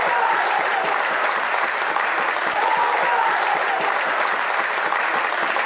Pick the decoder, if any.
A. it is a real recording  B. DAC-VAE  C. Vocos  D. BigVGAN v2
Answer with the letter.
D